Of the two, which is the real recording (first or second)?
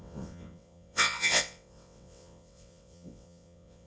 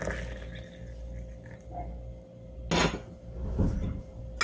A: second